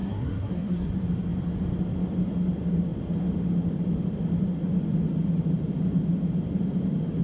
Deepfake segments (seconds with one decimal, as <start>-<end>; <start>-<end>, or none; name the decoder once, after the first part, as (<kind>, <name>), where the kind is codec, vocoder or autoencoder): 0.0-0.9 (codec, SNAC)